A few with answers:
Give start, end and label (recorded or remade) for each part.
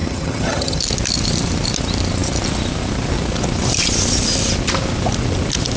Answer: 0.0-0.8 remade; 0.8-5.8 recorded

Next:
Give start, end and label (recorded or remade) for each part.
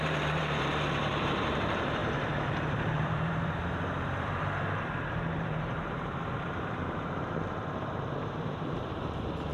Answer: 0.0-9.5 remade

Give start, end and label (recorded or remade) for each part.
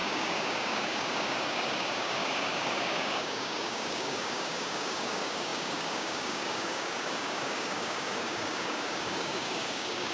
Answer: 0.0-10.1 remade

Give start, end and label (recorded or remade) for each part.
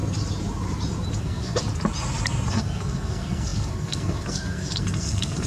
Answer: 0.0-1.2 recorded; 1.2-1.6 remade; 1.6-2.5 recorded; 2.5-5.5 remade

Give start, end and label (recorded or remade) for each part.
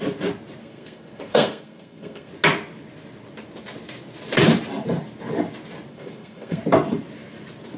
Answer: 0.0-0.6 recorded; 0.6-2.3 remade; 2.3-5.9 recorded; 5.9-6.6 remade; 6.6-7.8 recorded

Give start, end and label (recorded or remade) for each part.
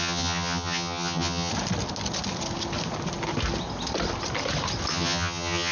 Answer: 0.0-1.5 remade; 1.5-4.9 recorded; 4.9-5.7 remade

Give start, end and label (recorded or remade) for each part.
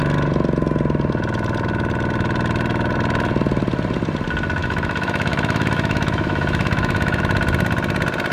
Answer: 0.0-4.6 recorded; 4.6-7.2 remade; 7.2-8.3 recorded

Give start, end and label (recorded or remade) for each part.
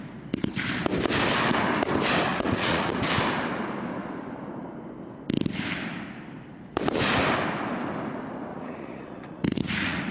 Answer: 0.0-2.3 recorded; 2.3-2.9 remade; 2.9-8.5 recorded; 8.5-10.1 remade